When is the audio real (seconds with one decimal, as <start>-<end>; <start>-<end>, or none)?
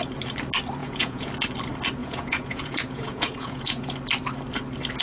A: 0.0-0.8; 1.3-2.0; 3.9-5.0